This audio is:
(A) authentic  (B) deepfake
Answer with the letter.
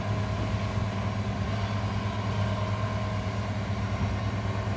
A